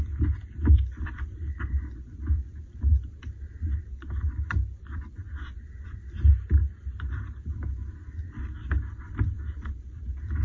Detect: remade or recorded recorded